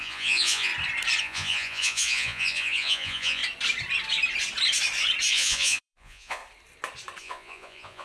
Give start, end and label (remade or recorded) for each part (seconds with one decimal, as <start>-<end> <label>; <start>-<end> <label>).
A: 0.0-0.7 remade; 0.7-1.2 recorded; 1.2-3.4 remade; 3.4-5.3 recorded; 5.3-6.4 remade; 6.4-7.2 recorded; 7.2-8.0 remade